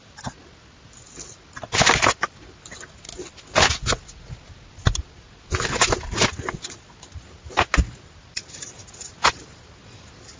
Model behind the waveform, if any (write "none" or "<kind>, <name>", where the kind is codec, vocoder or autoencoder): none